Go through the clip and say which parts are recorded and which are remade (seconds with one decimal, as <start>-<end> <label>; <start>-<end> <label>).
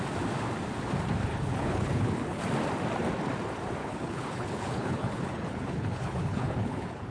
0.0-1.3 recorded; 1.3-2.4 remade; 2.4-3.8 recorded; 3.8-7.1 remade